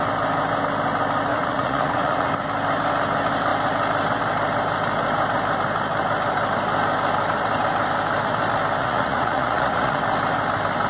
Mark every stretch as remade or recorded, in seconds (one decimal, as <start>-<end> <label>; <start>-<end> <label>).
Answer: 0.0-1.3 recorded; 1.3-2.3 remade; 2.3-8.8 recorded; 8.8-10.0 remade; 10.0-10.9 recorded